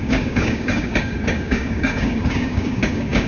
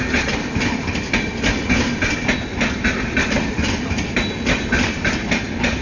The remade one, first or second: first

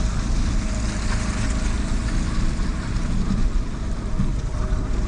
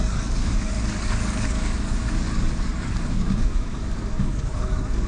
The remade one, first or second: second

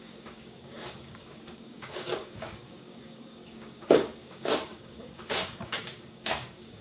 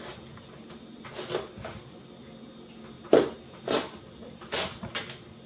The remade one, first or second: first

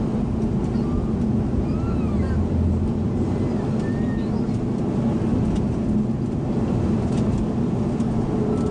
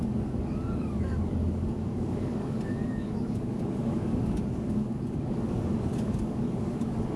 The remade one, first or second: second